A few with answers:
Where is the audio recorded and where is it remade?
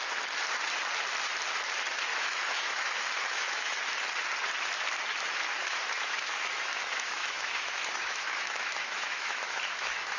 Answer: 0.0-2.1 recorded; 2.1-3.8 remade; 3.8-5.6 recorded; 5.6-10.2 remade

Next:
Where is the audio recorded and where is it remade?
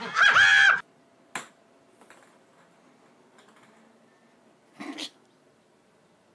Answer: 0.0-6.3 recorded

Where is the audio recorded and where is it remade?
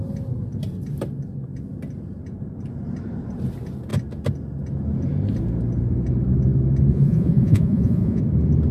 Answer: 0.0-6.9 recorded; 6.9-8.2 remade; 8.2-8.7 recorded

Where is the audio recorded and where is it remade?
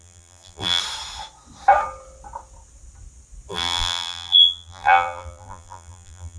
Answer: 0.0-0.8 remade; 0.8-3.5 recorded; 3.5-6.4 remade